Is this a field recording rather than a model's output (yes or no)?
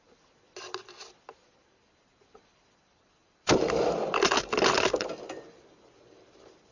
yes